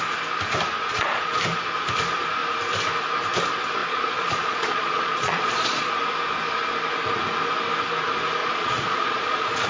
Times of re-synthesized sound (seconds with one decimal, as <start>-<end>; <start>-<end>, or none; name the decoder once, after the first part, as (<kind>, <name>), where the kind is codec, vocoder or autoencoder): 0.9-1.4 (vocoder, Vocos); 3.8-5.9; 8.4-9.7